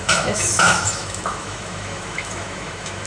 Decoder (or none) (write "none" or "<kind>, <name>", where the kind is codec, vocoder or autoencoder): autoencoder, DAC-VAE